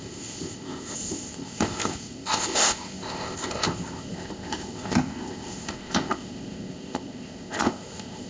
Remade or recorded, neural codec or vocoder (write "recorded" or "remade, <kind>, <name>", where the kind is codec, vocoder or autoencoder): remade, codec, ZipCodec